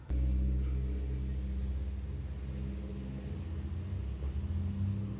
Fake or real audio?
real